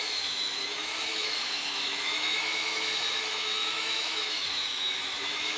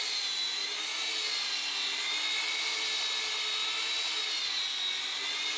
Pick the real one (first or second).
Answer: second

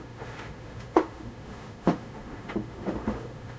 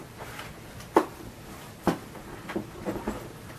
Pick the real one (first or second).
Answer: second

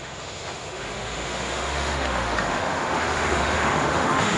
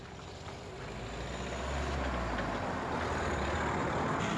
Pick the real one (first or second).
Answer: second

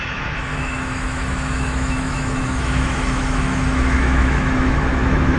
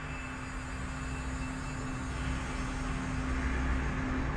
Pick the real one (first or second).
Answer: second